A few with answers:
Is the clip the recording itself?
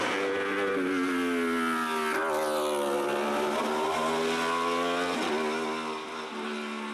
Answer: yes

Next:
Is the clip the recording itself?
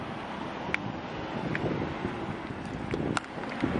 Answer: yes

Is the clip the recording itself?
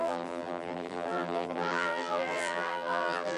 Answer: no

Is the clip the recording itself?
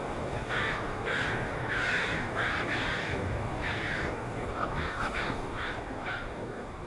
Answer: no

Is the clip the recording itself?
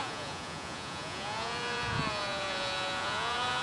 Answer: no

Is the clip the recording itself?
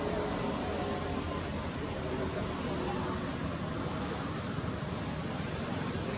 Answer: yes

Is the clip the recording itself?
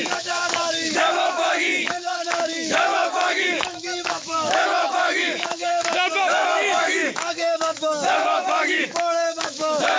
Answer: no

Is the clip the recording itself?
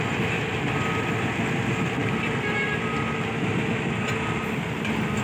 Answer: yes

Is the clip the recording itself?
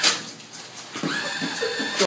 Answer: yes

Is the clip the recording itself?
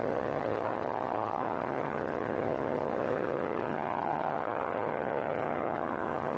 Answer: no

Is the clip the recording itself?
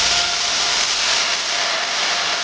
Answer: yes